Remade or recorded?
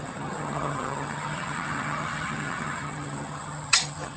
remade